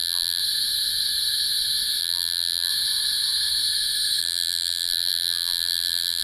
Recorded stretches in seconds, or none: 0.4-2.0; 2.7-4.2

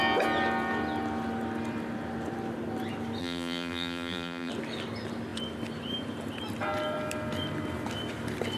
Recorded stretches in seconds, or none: 0.0-3.2; 4.5-8.6

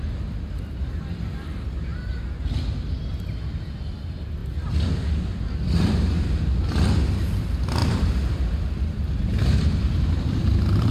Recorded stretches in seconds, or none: 0.0-7.8; 10.4-10.9

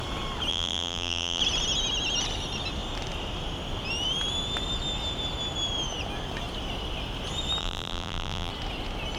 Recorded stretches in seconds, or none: 0.0-0.5; 1.4-7.6; 8.5-9.2